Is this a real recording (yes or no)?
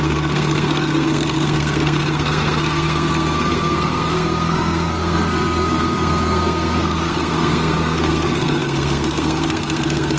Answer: no